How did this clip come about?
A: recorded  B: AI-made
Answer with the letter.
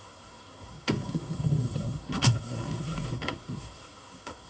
B